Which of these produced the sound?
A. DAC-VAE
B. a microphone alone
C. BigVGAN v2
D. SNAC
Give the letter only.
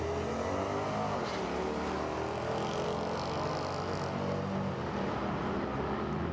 B